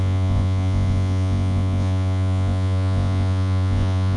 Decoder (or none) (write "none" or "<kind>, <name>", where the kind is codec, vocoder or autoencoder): vocoder, Vocos